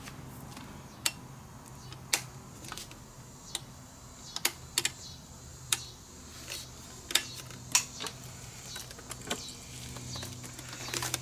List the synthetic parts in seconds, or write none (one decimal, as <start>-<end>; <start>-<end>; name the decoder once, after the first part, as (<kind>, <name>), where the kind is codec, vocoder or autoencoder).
5.5-6.1 (vocoder, BigVGAN v2)